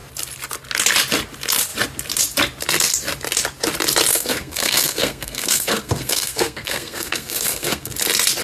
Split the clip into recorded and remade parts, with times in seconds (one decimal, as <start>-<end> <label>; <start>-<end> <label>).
0.0-4.1 recorded; 4.1-7.9 remade; 7.9-8.4 recorded